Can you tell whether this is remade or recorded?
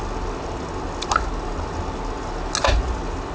recorded